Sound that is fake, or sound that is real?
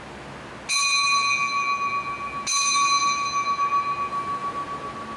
real